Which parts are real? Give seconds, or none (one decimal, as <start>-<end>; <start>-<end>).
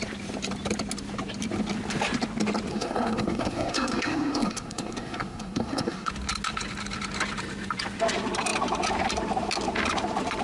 0.0-2.7; 6.1-10.4